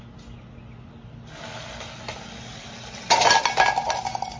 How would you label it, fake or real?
real